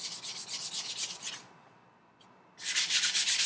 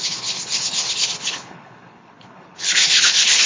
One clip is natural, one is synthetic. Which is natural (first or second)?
first